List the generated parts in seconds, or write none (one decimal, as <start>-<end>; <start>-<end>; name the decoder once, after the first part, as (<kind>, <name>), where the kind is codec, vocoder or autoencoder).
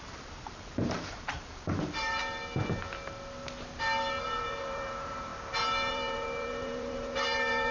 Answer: 0.0-2.2 (vocoder, BigVGAN v2); 4.2-5.3; 5.9-7.7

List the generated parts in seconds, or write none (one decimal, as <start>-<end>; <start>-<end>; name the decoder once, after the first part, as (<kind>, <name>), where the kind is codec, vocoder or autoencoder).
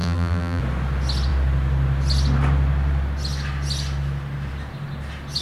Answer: 0.0-0.6 (vocoder, BigVGAN v2)